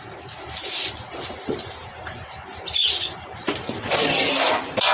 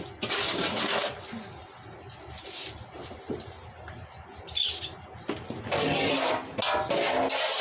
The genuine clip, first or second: second